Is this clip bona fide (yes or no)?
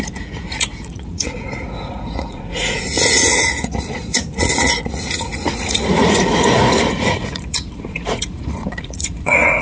no